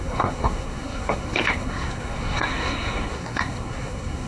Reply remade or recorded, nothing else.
remade